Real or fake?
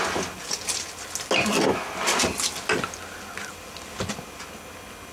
real